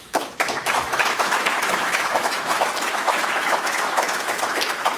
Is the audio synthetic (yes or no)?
yes